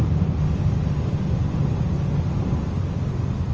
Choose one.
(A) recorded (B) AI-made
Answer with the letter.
A